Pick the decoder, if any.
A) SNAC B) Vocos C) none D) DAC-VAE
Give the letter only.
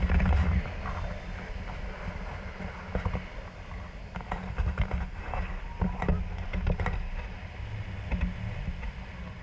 C